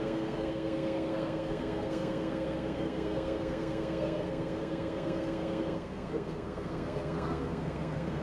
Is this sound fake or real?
fake